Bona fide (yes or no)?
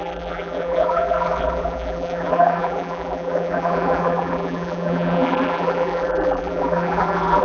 no